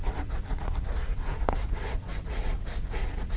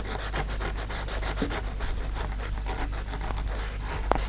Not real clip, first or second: first